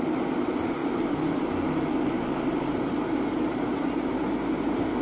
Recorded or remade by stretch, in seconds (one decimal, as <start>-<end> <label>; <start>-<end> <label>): 0.0-5.0 recorded